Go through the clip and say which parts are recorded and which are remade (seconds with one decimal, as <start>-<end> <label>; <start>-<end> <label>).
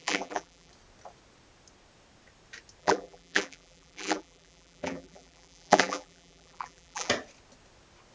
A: 0.0-0.7 remade; 0.7-2.8 recorded; 2.8-7.1 remade; 7.1-8.1 recorded